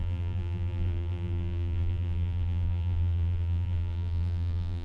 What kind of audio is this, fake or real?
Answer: fake